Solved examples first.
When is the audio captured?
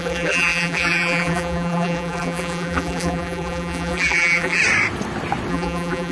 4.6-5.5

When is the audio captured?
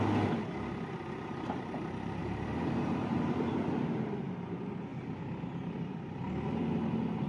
0.0-2.2; 3.5-7.3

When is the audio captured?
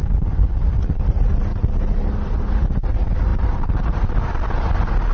0.0-1.5; 2.9-3.3; 4.1-5.1